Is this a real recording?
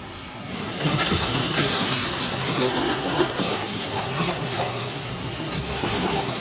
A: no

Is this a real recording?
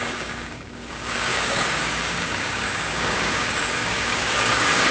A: no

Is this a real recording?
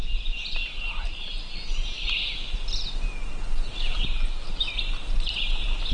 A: yes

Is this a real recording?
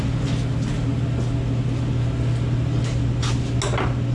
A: yes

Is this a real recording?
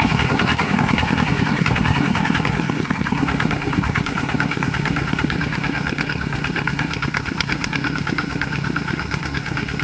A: no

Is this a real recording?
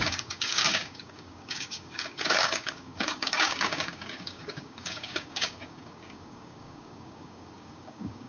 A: no